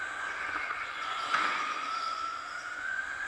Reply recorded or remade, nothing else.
remade